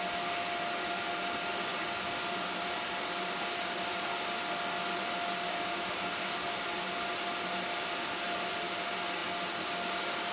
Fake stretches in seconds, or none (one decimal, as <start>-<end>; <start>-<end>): none